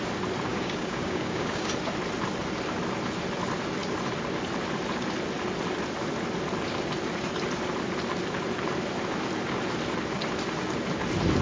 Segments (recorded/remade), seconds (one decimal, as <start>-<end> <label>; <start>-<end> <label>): 0.0-0.5 recorded; 0.5-1.7 remade; 1.7-11.4 recorded